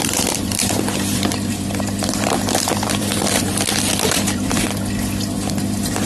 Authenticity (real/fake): fake